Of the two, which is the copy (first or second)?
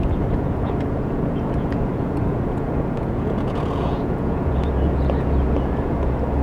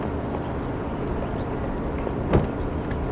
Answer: first